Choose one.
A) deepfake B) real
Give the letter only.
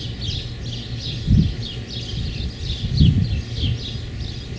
B